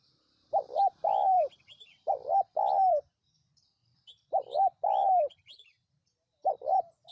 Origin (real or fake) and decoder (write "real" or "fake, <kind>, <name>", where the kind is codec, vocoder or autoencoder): fake, vocoder, BigVGAN v2